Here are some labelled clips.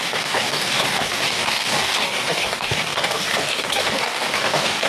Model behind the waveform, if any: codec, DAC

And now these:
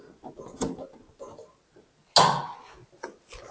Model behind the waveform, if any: none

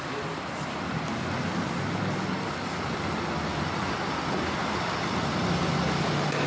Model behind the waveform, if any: none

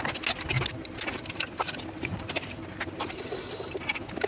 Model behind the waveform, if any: none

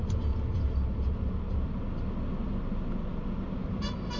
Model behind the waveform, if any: none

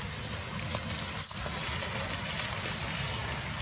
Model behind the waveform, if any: none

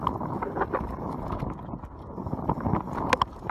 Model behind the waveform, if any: none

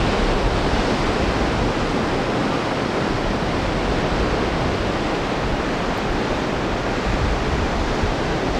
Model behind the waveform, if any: none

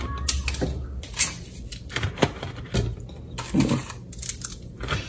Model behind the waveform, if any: none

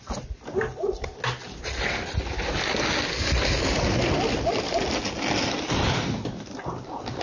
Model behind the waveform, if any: none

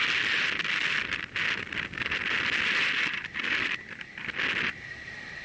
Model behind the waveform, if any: none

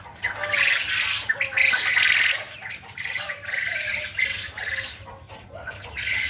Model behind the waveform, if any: none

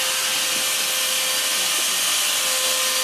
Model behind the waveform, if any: none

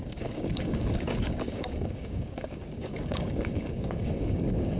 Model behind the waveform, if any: codec, DAC